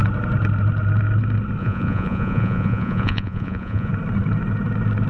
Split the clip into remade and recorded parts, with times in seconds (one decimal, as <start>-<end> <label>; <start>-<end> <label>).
0.0-1.6 recorded; 1.6-3.9 remade; 3.9-5.1 recorded